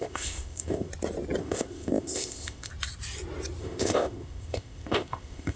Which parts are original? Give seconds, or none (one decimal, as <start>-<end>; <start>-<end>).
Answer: 0.9-1.4; 2.7-3.6